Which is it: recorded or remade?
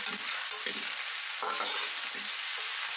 recorded